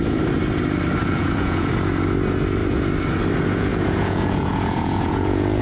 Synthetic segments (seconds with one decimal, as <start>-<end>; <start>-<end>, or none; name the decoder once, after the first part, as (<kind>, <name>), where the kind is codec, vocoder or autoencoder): 1.0-1.7 (vocoder, Vocos); 3.7-5.6